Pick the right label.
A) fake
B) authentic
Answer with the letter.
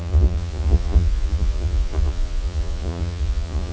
A